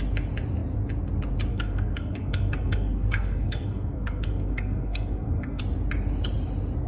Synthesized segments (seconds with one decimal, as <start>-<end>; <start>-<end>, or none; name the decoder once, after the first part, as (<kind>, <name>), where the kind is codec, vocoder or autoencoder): 1.5-5.6 (codec, SNAC)